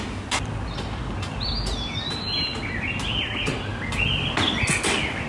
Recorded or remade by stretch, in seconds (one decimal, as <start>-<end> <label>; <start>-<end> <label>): 0.0-5.3 recorded